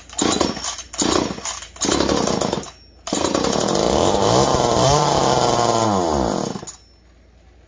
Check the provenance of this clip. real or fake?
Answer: real